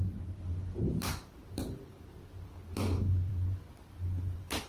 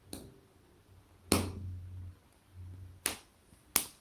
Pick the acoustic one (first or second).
second